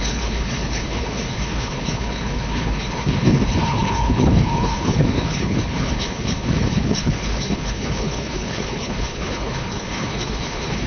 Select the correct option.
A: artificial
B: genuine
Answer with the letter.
A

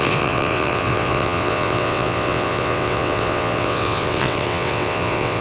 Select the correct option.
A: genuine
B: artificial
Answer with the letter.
B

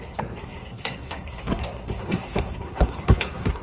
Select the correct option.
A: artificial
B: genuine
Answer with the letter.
A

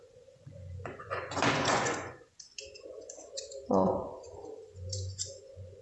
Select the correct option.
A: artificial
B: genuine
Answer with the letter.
A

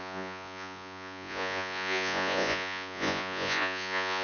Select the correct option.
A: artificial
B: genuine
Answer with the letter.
A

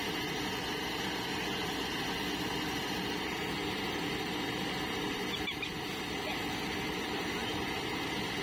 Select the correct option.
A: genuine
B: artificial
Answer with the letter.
A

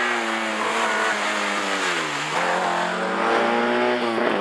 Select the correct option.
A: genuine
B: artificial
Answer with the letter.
A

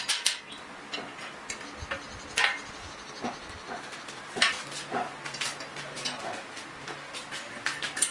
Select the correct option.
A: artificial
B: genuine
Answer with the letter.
B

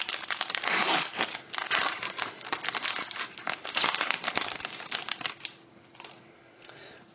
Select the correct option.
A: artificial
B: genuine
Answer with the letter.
B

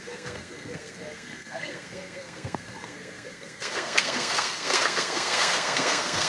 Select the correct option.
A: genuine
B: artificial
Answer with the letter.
B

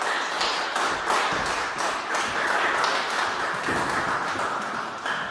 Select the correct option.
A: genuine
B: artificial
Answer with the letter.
A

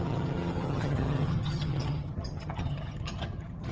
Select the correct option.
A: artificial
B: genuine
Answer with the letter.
A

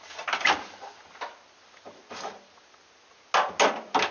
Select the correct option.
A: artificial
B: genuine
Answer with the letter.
B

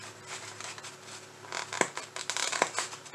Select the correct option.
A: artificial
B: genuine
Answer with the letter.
B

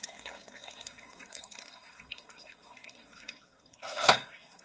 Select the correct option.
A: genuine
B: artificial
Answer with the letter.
B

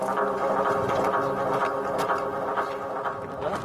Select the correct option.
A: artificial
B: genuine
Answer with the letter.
B